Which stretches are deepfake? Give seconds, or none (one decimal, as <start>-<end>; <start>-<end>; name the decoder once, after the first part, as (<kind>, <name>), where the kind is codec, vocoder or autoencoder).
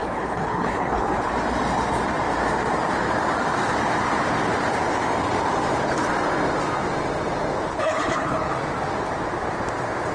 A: 0.0-1.3 (codec, HILCodec); 7.7-8.5